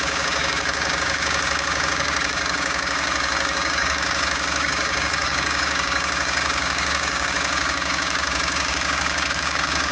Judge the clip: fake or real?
fake